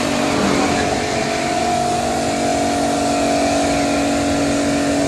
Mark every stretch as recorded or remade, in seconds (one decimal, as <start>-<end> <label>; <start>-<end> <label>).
0.0-5.1 recorded